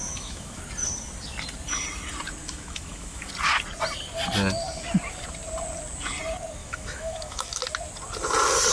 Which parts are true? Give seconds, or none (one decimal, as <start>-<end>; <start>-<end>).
0.6-2.4; 3.3-6.6; 7.6-8.7